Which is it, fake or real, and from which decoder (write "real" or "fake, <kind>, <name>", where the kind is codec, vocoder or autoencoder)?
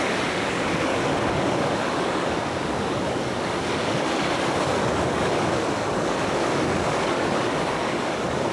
fake, codec, DAC